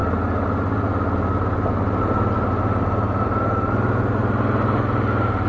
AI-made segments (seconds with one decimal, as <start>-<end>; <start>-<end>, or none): none